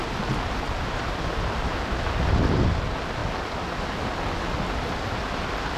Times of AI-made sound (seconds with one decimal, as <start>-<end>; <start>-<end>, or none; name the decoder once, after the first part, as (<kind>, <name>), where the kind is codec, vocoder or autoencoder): none